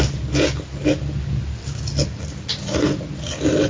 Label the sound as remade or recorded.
recorded